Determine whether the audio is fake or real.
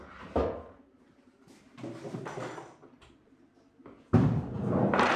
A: real